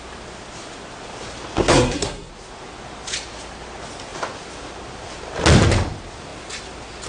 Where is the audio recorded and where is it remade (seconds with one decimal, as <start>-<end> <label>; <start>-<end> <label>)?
0.0-1.6 recorded; 1.6-2.3 remade; 2.3-7.1 recorded